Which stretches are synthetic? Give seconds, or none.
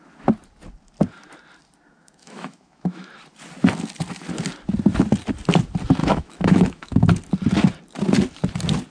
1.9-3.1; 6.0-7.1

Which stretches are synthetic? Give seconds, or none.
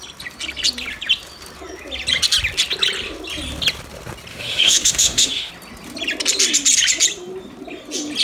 4.3-5.5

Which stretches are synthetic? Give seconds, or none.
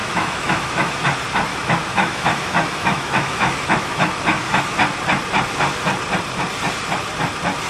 0.0-1.0; 1.5-4.6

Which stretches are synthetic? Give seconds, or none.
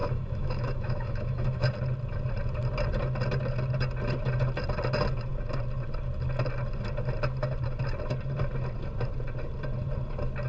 0.0-1.7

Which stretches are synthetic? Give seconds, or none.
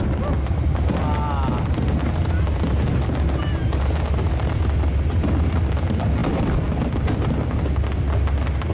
none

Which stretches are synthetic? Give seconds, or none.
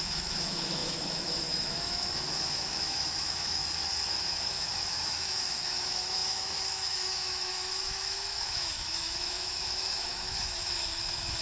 0.0-3.6; 4.1-11.4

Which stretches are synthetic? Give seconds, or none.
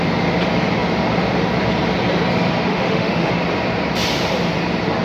2.7-3.3